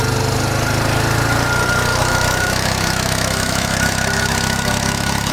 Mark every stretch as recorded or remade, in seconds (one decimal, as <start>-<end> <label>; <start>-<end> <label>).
0.0-1.9 recorded; 1.9-5.3 remade